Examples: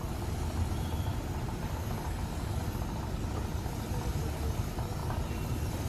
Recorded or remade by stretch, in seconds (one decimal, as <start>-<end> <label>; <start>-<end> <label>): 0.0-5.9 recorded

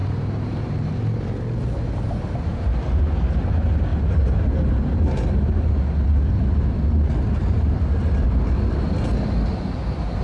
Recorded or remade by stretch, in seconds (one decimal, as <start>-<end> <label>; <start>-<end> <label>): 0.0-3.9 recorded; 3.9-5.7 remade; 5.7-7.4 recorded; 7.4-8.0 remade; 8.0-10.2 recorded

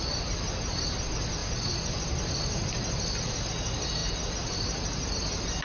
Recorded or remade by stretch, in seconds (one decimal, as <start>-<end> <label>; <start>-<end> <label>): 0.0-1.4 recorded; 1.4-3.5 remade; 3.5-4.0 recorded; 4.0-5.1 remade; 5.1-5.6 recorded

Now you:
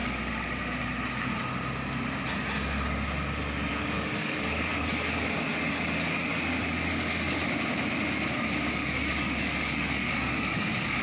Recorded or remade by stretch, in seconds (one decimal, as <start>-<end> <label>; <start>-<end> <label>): 0.0-3.7 recorded; 3.7-7.4 remade; 7.4-8.7 recorded; 8.7-11.0 remade

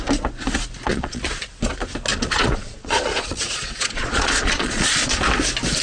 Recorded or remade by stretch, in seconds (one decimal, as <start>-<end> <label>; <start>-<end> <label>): 0.0-0.9 recorded; 0.9-1.4 remade; 1.4-2.1 recorded; 2.1-5.2 remade; 5.2-5.8 recorded

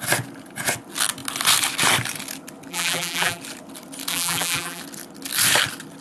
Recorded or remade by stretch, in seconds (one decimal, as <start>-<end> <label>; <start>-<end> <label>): 0.0-2.7 recorded; 2.7-3.4 remade; 3.4-4.1 recorded; 4.1-4.8 remade; 4.8-6.0 recorded

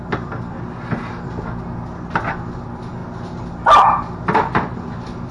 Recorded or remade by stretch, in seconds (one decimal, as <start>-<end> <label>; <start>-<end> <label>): 0.0-5.3 recorded